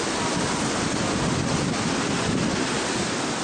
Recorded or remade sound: recorded